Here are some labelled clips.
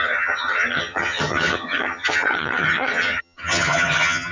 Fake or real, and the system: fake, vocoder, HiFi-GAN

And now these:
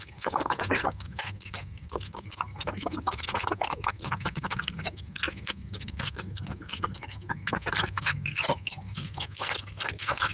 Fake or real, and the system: fake, codec, SNAC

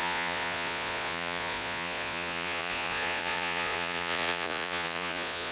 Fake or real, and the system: fake, vocoder, Vocos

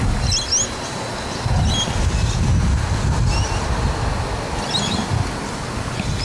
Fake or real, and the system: real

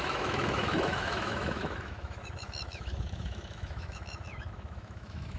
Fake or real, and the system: fake, autoencoder, DAC-VAE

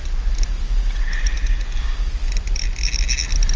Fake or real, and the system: real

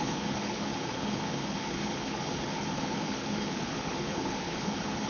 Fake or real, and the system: fake, codec, HILCodec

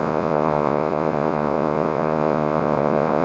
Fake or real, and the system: fake, vocoder, Vocos